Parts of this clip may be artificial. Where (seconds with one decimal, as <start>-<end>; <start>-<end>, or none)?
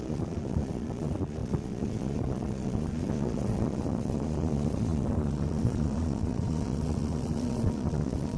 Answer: 0.0-8.4